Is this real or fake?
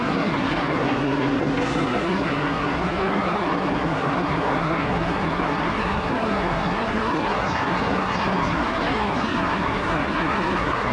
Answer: fake